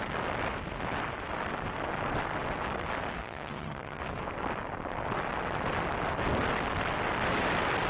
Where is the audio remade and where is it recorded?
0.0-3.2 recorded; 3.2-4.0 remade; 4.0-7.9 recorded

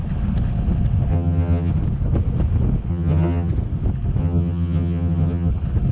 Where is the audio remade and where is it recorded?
0.0-1.1 recorded; 1.1-1.7 remade; 1.7-2.9 recorded; 2.9-3.5 remade; 3.5-4.2 recorded; 4.2-5.5 remade; 5.5-5.9 recorded

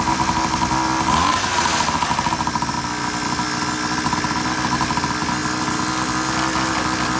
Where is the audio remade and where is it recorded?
0.0-7.2 recorded

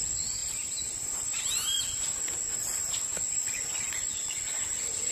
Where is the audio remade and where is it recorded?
0.0-0.4 recorded; 0.4-1.8 remade; 1.8-5.1 recorded

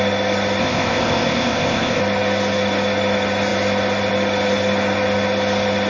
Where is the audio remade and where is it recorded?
0.0-0.6 recorded; 0.6-2.0 remade; 2.0-5.9 recorded